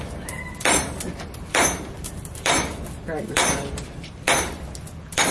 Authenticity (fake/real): fake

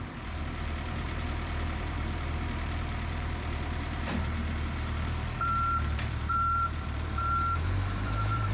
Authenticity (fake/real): fake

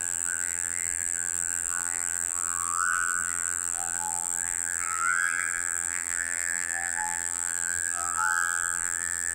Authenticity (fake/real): fake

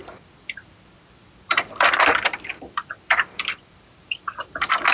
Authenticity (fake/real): fake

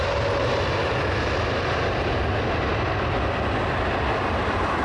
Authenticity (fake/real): real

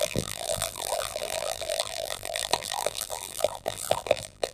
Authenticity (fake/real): fake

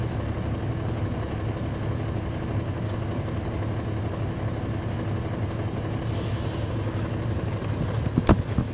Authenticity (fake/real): real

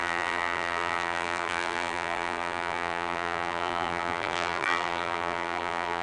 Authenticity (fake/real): fake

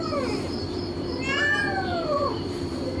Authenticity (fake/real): fake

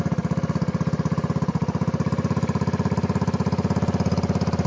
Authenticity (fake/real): real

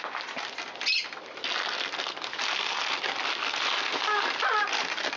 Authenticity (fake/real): real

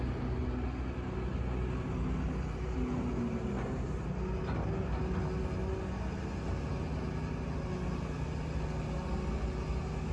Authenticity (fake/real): real